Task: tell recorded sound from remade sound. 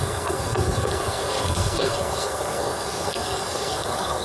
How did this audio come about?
remade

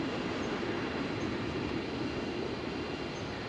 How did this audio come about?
recorded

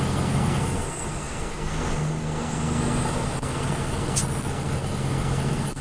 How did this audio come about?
remade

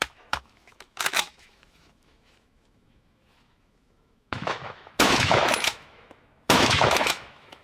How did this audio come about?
remade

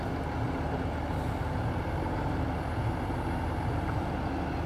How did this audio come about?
recorded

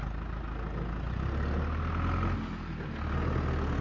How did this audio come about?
recorded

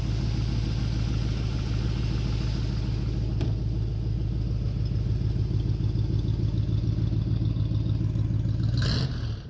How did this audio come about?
recorded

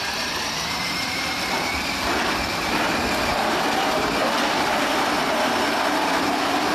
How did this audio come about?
remade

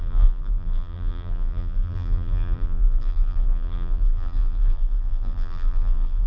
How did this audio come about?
remade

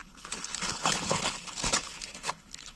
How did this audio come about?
remade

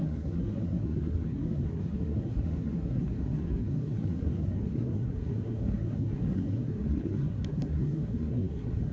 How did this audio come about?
remade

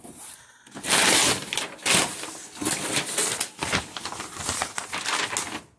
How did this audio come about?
recorded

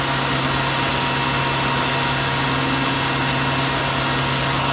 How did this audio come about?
recorded